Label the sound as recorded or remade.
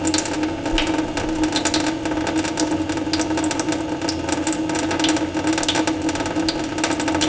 recorded